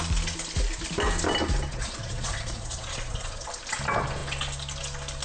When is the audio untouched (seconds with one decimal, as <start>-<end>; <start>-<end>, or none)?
0.0-1.7; 3.5-5.2